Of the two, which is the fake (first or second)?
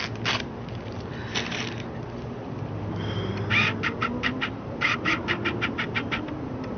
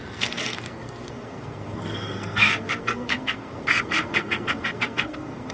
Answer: second